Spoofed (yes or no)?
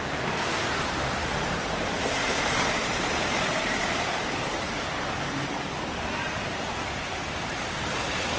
yes